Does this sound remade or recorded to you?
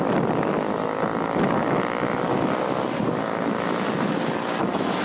recorded